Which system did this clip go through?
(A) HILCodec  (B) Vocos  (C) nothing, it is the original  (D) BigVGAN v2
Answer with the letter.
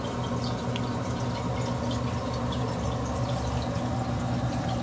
C